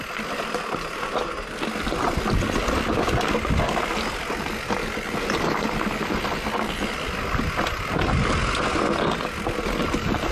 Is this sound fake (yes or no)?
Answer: no